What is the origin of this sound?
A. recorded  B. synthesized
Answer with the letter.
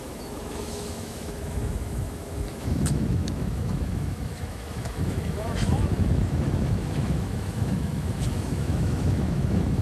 B